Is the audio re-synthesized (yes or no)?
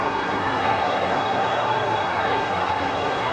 yes